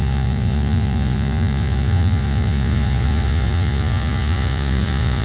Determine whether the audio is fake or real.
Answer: fake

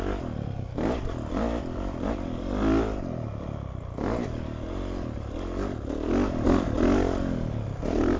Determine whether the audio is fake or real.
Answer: real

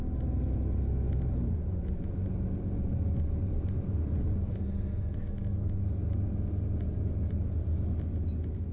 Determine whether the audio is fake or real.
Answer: real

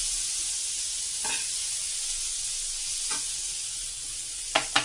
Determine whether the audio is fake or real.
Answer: fake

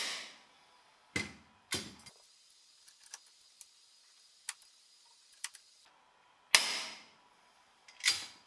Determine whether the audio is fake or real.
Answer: real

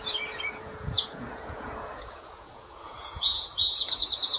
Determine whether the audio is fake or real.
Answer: fake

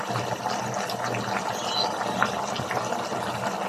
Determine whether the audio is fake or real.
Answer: real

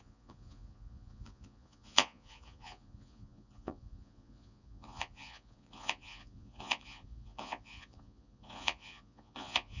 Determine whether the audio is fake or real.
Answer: fake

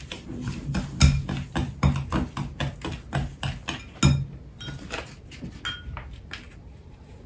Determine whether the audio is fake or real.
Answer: real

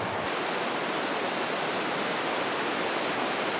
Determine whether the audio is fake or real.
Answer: real